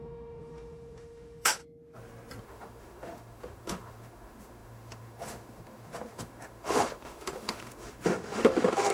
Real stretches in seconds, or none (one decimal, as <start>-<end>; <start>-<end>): 1.6-2.4